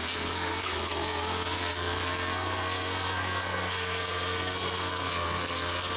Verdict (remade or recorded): remade